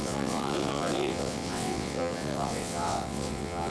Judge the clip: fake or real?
fake